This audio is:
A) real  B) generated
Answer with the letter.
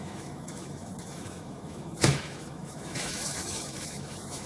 B